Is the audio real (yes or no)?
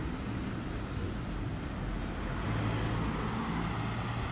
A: yes